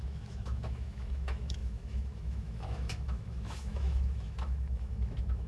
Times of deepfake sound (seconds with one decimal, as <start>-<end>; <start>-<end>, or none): 0.0-5.5